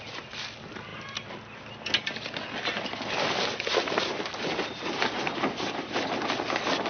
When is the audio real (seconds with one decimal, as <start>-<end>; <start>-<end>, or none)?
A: 0.0-6.9